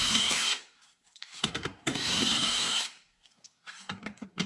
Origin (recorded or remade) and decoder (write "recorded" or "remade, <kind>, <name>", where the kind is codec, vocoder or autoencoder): remade, codec, SNAC